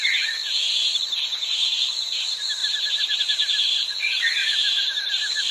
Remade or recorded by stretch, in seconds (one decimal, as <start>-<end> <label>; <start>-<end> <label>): 0.0-0.4 recorded; 0.4-1.0 remade; 1.0-2.6 recorded; 2.6-3.2 remade; 3.2-4.4 recorded; 4.4-5.1 remade; 5.1-5.5 recorded